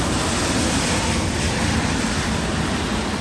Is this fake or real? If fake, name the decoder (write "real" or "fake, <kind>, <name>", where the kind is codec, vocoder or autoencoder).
real